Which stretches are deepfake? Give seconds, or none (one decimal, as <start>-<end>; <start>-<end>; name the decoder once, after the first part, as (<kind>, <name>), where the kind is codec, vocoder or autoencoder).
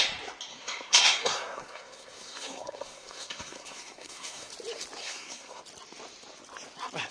0.5-4.5 (codec, SNAC); 5.0-5.6